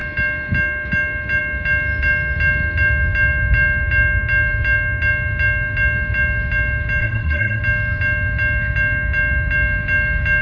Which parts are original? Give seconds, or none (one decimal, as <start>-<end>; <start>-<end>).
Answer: 0.0-7.0; 7.6-10.4